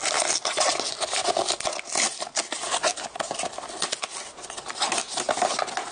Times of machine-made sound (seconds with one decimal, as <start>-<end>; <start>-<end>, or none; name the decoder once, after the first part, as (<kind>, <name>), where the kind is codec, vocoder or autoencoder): none